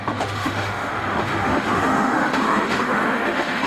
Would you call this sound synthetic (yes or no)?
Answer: yes